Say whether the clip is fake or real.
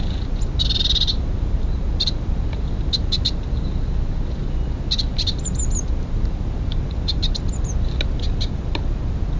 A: real